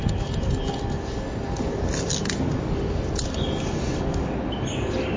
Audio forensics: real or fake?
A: real